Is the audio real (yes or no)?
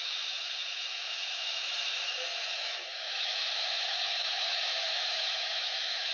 no